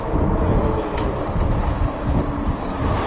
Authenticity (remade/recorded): recorded